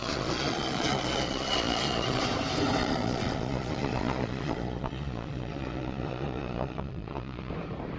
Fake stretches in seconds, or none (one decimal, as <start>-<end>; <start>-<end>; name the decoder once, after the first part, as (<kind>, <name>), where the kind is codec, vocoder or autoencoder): 0.0-2.2 (vocoder, Vocos); 2.8-7.5